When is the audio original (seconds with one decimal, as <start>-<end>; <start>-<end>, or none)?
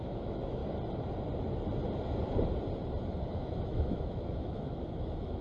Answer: 0.6-3.3